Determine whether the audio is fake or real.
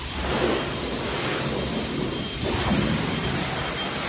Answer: real